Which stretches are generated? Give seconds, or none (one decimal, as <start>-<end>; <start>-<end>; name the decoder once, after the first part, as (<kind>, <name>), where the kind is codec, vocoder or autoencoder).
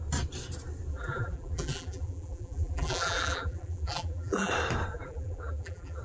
0.9-4.5 (vocoder, BigVGAN v2); 4.9-6.0